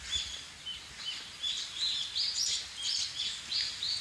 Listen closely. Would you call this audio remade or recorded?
recorded